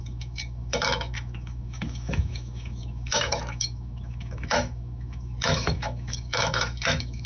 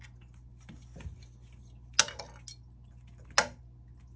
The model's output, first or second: first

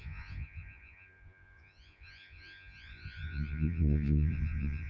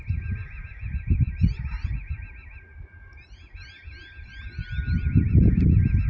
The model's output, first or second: first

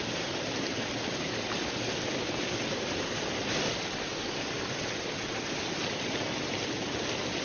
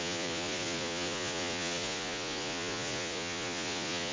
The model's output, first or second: second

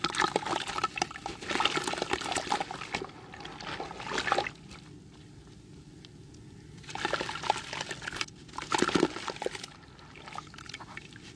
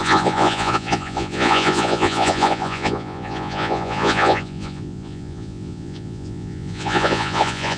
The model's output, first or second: second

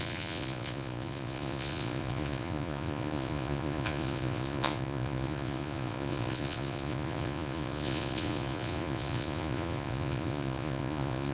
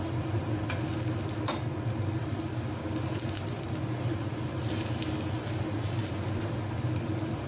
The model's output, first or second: first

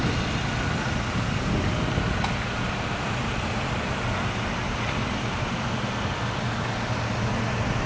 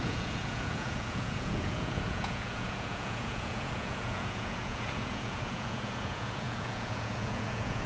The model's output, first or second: second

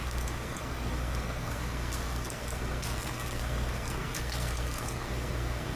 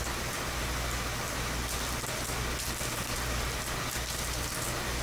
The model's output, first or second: first